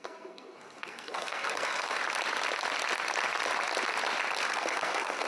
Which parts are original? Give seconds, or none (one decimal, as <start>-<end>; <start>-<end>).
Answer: 2.0-4.4